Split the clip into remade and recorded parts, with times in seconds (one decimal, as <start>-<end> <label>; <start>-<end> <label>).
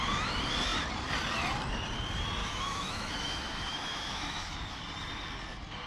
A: 0.0-2.4 recorded; 2.4-4.8 remade; 4.8-5.9 recorded